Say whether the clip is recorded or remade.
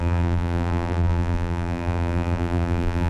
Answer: remade